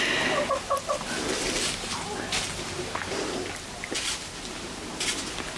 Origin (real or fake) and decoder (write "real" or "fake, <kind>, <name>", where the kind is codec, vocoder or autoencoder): real